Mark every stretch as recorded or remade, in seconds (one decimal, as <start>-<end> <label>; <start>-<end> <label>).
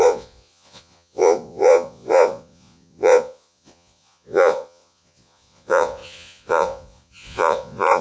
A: 0.0-8.0 remade